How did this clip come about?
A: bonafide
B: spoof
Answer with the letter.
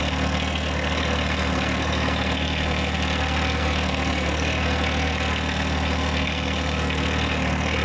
B